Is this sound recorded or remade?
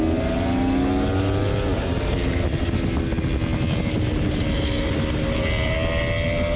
recorded